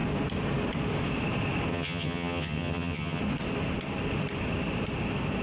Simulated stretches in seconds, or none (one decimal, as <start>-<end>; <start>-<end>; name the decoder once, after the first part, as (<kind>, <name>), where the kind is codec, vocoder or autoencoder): 1.7-3.2 (vocoder, HiFi-GAN)